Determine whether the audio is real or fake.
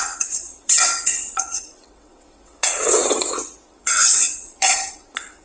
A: fake